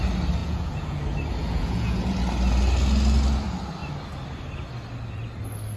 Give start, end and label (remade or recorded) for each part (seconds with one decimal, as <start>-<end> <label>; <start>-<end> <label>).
0.0-0.4 recorded; 0.4-1.0 remade; 1.0-1.4 recorded; 1.4-2.1 remade; 2.1-5.8 recorded